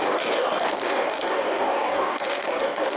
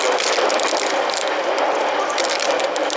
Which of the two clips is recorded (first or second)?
second